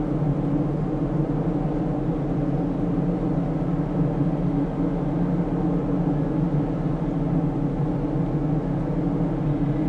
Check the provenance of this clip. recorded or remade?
recorded